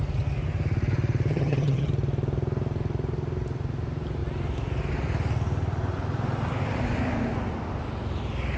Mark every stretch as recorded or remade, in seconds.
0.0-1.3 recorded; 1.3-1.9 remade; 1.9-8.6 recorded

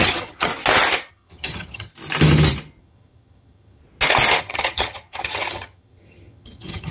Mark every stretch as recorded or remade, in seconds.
0.0-0.5 remade; 0.5-1.1 recorded; 1.1-1.9 remade; 1.9-2.8 recorded; 2.8-3.8 remade; 3.8-4.4 recorded; 4.4-6.9 remade